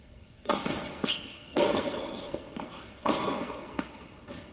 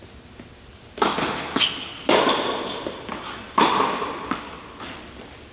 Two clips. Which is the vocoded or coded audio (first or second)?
first